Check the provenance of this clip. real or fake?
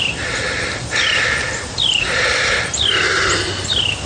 real